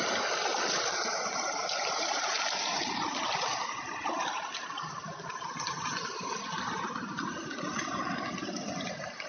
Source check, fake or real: real